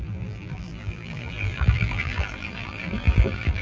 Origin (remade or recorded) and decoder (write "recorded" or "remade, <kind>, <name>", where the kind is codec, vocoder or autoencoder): remade, vocoder, BigVGAN v2